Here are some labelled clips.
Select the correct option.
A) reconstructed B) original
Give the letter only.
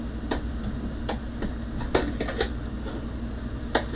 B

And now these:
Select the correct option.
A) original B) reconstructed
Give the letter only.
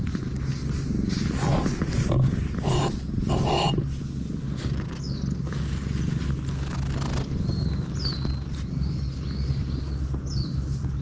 A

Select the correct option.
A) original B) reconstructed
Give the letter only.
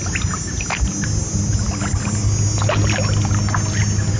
A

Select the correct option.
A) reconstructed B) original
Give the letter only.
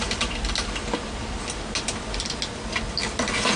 B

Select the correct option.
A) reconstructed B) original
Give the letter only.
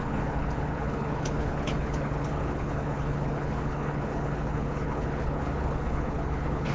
A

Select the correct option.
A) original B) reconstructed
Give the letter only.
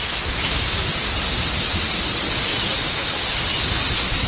A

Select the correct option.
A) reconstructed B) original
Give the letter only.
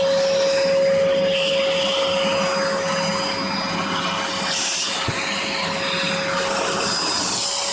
B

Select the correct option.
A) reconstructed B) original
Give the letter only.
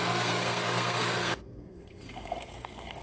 A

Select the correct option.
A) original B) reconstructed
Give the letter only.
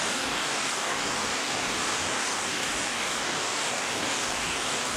B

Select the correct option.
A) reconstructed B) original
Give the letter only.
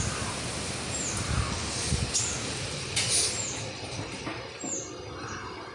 B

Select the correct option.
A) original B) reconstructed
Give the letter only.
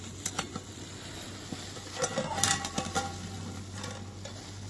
A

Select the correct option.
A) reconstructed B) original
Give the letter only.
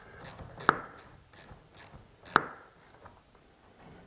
B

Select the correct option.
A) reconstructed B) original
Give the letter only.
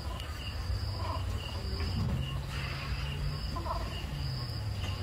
B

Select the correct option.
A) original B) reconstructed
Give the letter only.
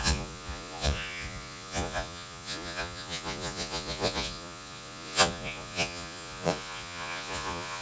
B